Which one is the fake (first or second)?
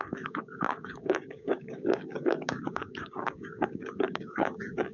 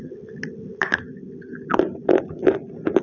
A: first